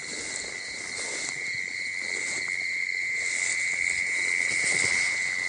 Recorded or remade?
recorded